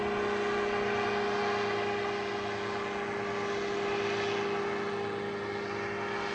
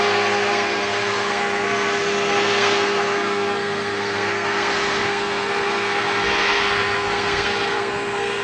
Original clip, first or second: first